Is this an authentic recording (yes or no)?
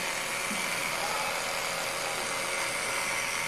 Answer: yes